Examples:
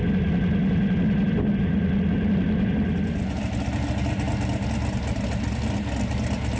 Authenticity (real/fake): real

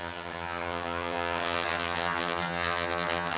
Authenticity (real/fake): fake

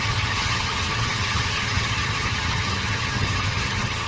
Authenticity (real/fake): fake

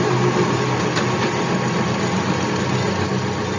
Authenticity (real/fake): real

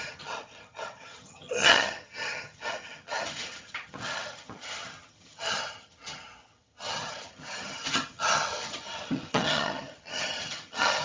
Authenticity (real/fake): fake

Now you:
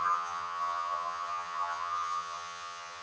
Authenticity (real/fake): fake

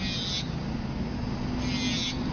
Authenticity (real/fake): real